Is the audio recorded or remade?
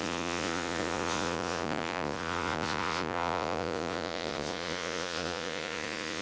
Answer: remade